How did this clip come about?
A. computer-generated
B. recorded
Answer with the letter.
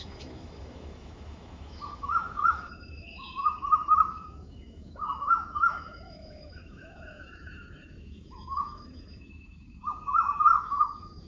A